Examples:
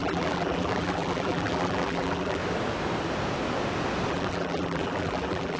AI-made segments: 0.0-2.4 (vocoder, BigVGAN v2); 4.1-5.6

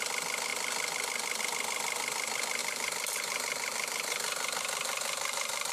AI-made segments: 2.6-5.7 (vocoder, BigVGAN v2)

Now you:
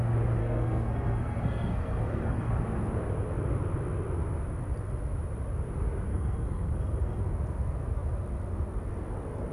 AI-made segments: 0.4-2.5 (codec, SNAC); 6.1-7.2

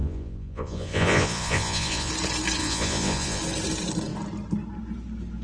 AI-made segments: 0.0-2.1 (vocoder, Vocos); 2.6-3.4